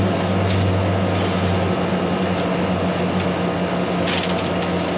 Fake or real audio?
real